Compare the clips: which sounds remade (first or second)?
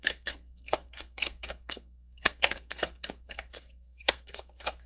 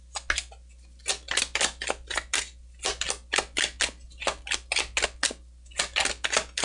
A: first